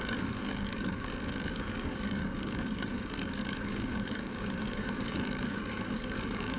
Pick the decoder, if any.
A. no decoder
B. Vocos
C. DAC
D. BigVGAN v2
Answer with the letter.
C